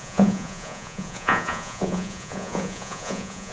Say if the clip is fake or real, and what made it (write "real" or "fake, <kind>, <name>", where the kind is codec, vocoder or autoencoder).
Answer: fake, vocoder, Vocos